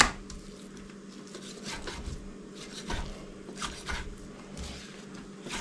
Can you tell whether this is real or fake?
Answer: real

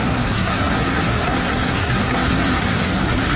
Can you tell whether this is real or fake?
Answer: fake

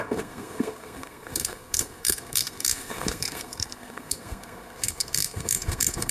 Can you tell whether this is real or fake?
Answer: fake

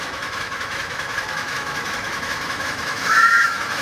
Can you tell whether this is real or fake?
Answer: fake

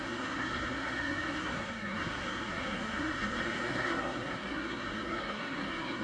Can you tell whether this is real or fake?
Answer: fake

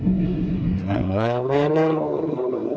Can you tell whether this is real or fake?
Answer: fake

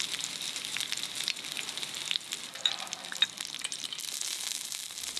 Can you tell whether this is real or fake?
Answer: fake